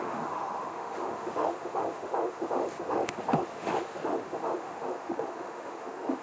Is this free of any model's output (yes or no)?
no